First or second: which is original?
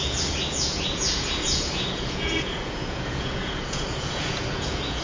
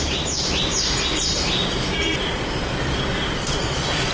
second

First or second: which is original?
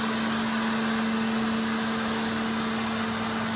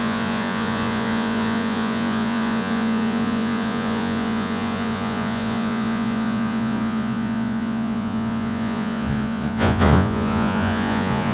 first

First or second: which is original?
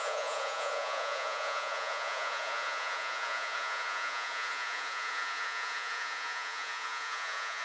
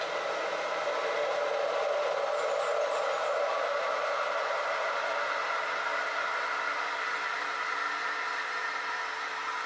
second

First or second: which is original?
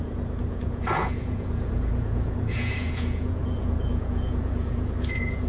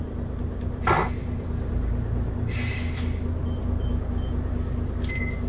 second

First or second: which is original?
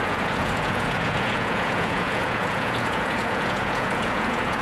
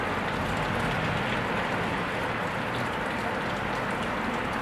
second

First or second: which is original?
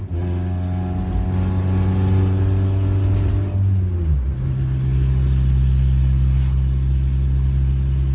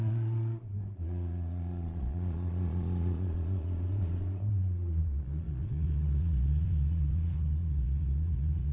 first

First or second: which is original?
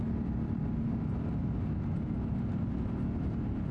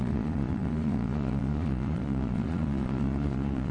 first